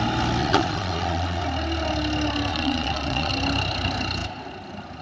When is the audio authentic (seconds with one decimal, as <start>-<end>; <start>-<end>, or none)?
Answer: 0.0-0.4; 1.4-2.5; 3.3-5.0